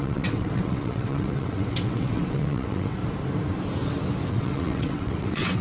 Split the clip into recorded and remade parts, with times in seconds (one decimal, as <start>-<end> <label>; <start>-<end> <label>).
0.0-3.0 remade; 3.0-4.3 recorded; 4.3-5.6 remade